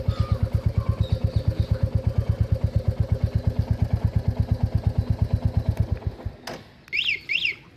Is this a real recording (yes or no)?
yes